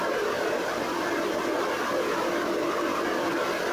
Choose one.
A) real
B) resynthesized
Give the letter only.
A